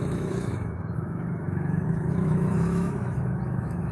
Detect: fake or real fake